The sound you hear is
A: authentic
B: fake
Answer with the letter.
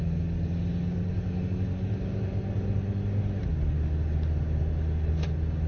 A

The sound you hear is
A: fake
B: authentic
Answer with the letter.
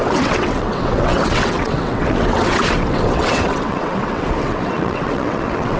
A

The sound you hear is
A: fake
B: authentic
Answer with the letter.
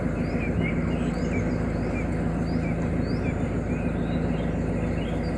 B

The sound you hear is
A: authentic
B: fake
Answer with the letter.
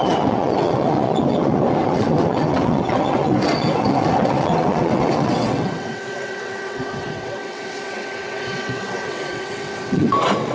B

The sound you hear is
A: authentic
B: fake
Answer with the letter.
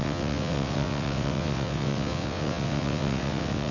B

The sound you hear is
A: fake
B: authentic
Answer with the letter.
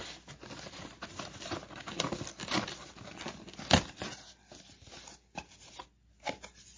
B